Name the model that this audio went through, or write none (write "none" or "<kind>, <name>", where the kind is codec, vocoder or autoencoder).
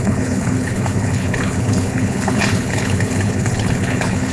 codec, HILCodec